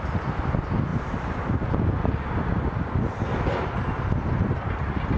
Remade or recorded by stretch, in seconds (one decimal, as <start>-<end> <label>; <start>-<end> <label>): 0.0-5.2 recorded